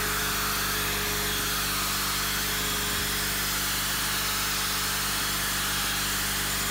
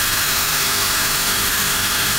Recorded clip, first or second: first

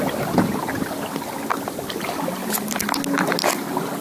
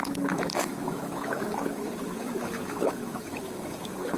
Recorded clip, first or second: first